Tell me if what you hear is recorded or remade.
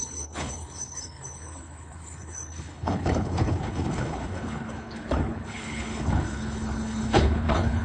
remade